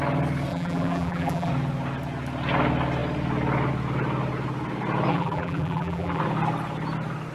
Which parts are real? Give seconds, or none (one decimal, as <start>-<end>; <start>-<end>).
0.0-0.5; 1.5-5.1; 6.2-7.3